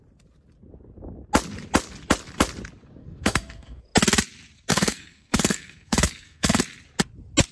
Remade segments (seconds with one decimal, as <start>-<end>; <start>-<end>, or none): 3.0-3.8; 4.7-6.6